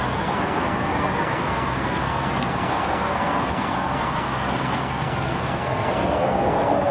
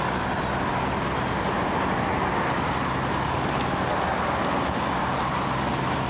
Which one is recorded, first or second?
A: second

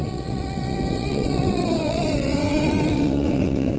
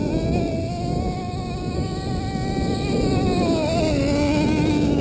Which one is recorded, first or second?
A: second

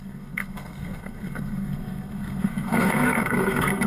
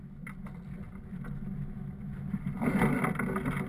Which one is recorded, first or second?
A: second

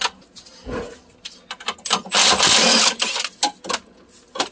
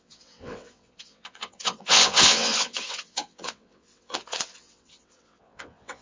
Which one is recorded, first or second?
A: first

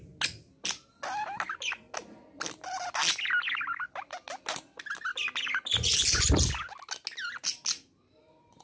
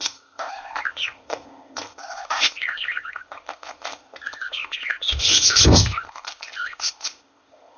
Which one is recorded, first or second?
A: first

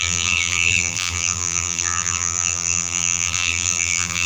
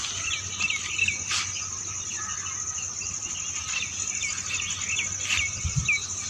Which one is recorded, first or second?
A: second